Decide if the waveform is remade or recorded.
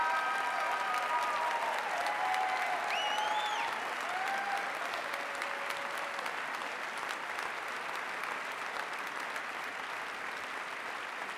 recorded